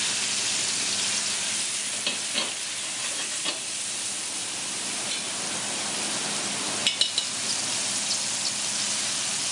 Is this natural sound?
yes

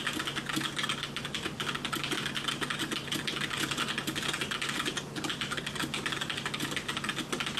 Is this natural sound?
yes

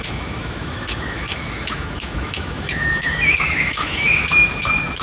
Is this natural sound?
no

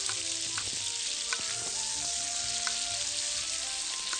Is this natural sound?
yes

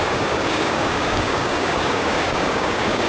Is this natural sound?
no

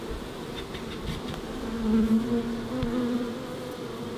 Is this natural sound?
yes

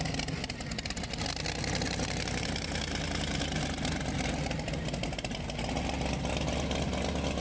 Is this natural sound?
yes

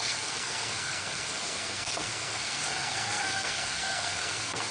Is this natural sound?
no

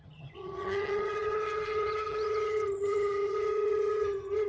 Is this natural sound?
no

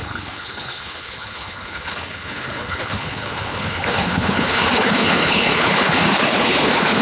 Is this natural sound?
no